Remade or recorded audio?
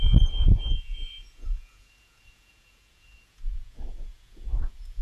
remade